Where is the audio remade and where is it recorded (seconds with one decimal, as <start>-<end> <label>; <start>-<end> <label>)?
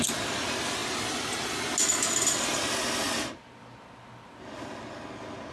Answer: 0.0-5.5 recorded